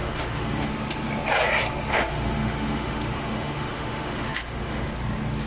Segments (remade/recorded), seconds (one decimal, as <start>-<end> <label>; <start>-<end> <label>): 0.0-0.7 remade; 0.7-1.9 recorded; 1.9-4.9 remade; 4.9-5.5 recorded